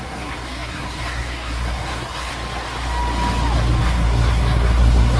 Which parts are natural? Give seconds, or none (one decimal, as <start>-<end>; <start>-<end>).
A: 2.3-3.8